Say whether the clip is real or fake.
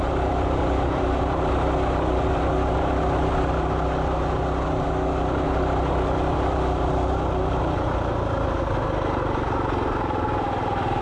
real